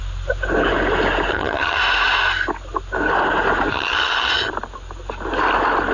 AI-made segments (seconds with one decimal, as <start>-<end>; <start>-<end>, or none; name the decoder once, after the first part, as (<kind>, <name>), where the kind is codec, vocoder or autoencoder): 1.3-1.8 (vocoder, HiFi-GAN); 3.7-4.5